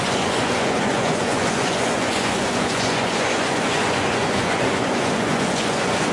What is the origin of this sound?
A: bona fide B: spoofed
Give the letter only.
B